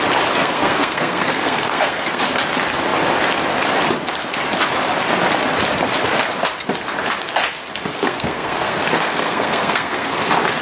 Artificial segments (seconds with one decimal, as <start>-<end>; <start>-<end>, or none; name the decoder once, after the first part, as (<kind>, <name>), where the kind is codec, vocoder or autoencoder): 0.4-2.2 (codec, SNAC); 7.9-10.2